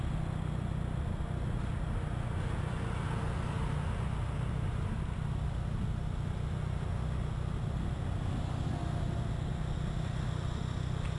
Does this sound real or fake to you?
real